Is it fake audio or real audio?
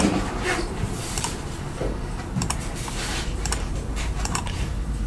fake